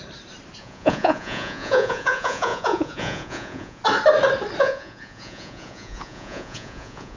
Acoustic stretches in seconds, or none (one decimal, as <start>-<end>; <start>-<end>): 0.0-0.6; 3.8-4.6